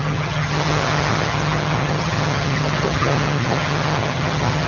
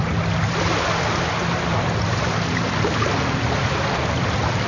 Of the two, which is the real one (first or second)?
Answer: second